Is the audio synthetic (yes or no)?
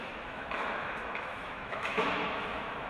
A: yes